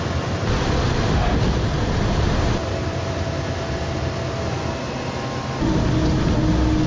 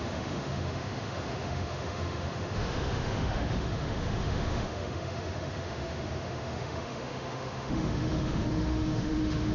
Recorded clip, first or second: first